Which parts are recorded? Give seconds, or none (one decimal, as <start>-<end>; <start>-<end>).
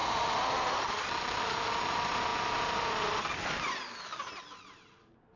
0.0-5.4